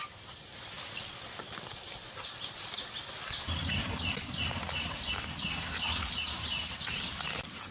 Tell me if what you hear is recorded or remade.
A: recorded